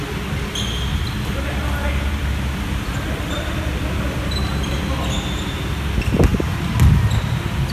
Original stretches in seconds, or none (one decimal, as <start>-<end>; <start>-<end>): 0.0-1.8; 4.0-7.7